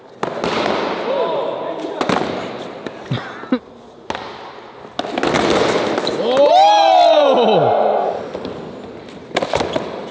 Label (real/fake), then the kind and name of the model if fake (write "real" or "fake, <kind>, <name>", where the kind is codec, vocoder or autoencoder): real